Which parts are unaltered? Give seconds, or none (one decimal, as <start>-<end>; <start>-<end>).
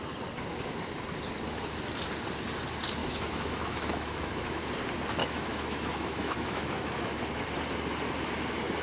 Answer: 0.0-3.0; 4.7-5.2; 7.2-8.8